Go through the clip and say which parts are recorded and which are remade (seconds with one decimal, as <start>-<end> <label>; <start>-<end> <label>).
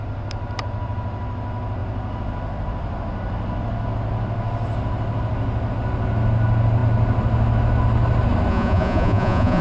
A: 0.0-8.5 recorded; 8.5-9.6 remade